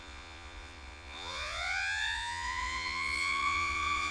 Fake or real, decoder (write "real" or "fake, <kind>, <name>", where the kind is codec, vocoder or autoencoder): fake, vocoder, Vocos